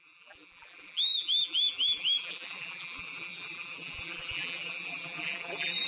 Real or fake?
fake